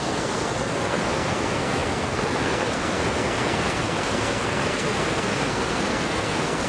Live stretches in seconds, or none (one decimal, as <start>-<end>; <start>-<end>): none